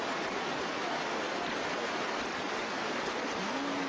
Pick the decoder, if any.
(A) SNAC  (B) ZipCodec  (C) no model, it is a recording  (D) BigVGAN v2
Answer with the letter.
C